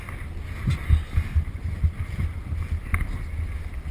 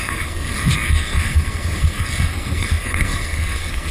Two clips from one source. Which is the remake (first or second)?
second